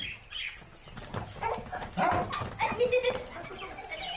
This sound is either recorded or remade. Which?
recorded